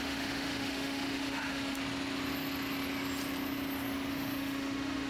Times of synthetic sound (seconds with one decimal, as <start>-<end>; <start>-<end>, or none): 0.0-1.8; 4.1-5.1